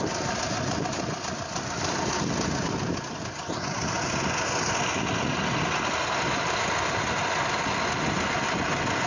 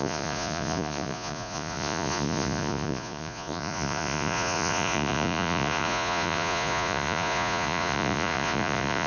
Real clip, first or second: first